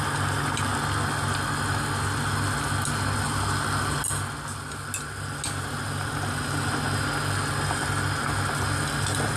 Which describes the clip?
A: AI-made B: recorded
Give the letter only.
B